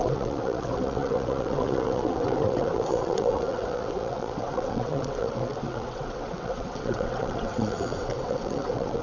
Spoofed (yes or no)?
yes